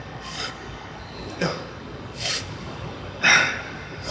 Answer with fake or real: fake